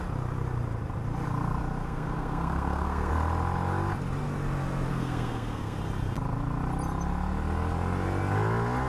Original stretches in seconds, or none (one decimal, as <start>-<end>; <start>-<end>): 0.0-1.8; 3.1-4.9; 5.8-8.9